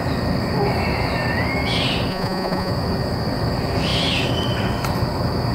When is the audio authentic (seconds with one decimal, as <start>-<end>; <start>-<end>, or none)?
0.0-2.1; 2.7-5.5

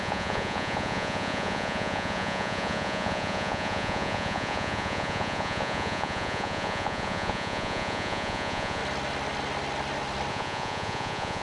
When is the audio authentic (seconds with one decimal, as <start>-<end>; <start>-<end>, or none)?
8.8-10.3

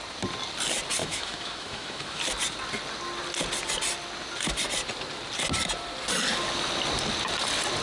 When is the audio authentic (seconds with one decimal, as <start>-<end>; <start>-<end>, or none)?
0.0-1.0; 2.2-7.8